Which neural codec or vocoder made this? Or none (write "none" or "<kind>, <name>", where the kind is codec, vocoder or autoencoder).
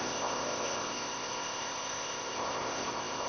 codec, ZipCodec